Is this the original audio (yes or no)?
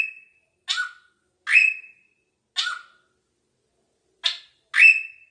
yes